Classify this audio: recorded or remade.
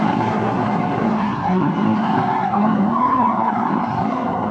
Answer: remade